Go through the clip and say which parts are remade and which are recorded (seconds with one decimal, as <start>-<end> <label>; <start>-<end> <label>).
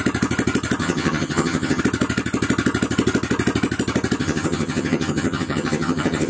0.0-0.8 recorded; 0.8-1.8 remade; 1.8-4.2 recorded; 4.2-6.3 remade